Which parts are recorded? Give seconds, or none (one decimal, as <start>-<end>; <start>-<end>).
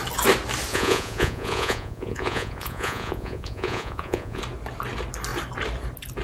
0.0-0.7; 4.4-6.2